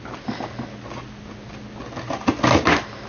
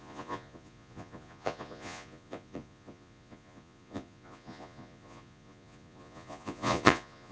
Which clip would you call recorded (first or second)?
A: first